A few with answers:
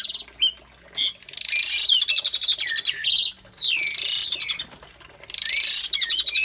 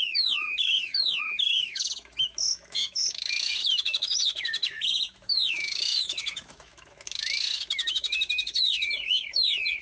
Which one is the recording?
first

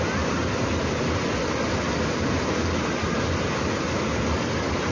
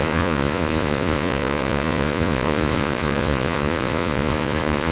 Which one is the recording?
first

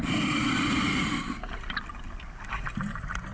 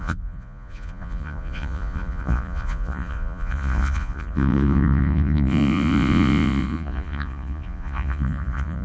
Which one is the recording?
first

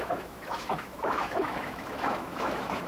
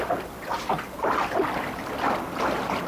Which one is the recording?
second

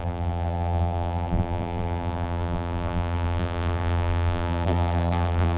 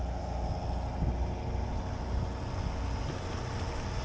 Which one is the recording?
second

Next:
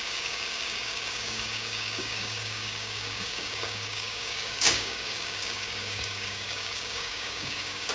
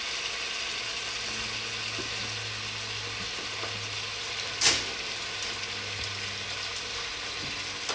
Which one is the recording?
second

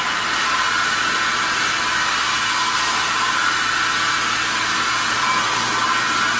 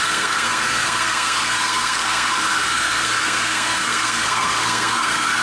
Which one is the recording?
first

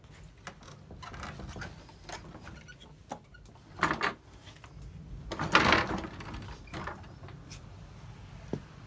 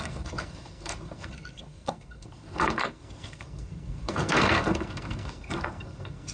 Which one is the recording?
first